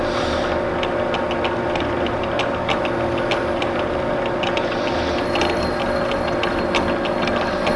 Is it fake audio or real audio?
real